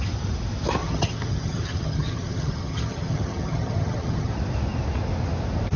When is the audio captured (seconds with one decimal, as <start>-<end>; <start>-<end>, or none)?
0.0-0.8; 4.3-5.8